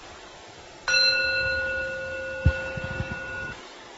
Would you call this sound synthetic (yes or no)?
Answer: no